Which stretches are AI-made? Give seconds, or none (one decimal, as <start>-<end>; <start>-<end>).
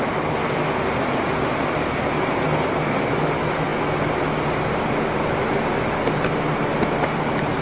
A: none